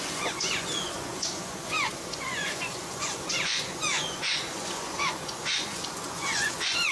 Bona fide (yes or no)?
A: no